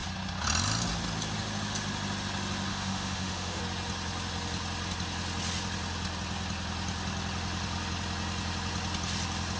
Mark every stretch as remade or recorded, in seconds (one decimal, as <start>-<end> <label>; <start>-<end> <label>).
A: 0.0-2.7 recorded; 2.7-3.6 remade; 3.6-9.6 recorded